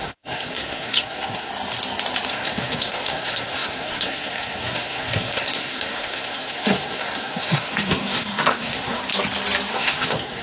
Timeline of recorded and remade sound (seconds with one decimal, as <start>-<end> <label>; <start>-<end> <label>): 0.0-1.5 remade; 1.5-2.3 recorded; 2.3-9.0 remade; 9.0-9.7 recorded; 9.7-10.4 remade